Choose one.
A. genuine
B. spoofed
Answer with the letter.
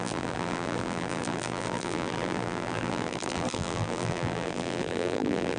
B